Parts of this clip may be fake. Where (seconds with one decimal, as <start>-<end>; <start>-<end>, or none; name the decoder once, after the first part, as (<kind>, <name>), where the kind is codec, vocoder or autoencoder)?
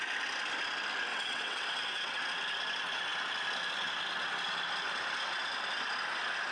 1.1-2.2 (vocoder, WaveNeXt)